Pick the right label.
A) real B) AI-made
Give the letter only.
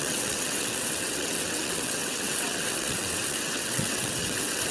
B